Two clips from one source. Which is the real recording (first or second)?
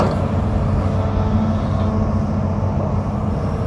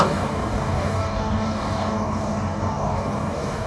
first